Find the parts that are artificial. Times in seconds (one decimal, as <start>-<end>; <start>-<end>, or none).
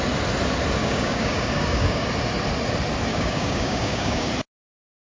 0.8-2.1; 3.1-4.3